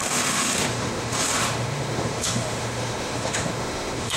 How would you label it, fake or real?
fake